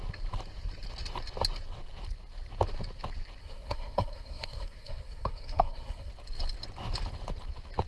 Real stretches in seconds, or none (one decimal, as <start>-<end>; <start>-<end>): 0.0-3.4; 6.1-7.9